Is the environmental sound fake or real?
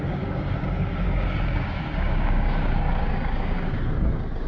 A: fake